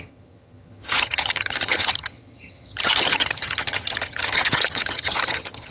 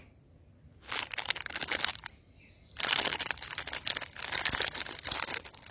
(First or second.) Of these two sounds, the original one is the second